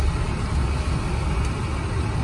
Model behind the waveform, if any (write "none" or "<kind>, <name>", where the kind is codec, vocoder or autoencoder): none